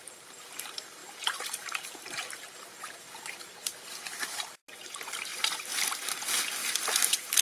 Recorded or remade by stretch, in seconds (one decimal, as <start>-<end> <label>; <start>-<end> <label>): 0.0-5.7 remade; 5.7-6.6 recorded; 6.6-7.4 remade

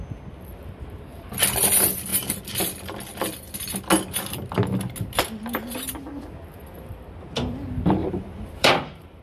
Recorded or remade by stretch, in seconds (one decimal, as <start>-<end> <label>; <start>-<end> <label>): 0.0-8.0 recorded; 8.0-9.2 remade

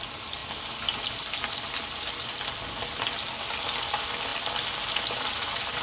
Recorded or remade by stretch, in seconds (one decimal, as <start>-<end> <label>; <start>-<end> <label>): 0.0-5.8 recorded

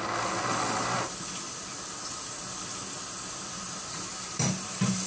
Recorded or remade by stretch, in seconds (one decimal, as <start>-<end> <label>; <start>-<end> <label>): 0.0-5.1 recorded

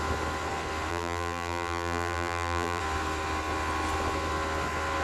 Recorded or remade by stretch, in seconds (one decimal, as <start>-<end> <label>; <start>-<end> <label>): 0.0-0.9 recorded; 0.9-2.8 remade; 2.8-5.0 recorded